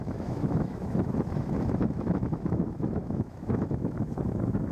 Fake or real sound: fake